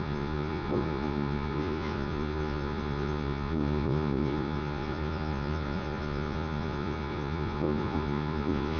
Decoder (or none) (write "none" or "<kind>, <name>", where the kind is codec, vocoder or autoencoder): vocoder, Vocos